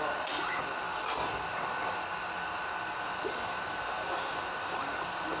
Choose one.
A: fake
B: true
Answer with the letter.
B